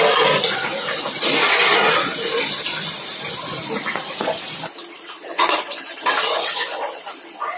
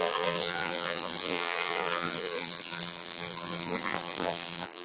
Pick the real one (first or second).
first